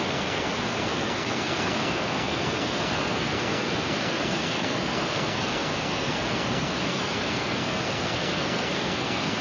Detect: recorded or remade remade